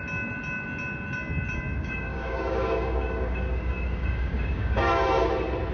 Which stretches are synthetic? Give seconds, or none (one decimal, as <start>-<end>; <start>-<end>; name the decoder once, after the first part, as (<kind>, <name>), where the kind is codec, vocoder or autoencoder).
1.8-5.2 (codec, DAC)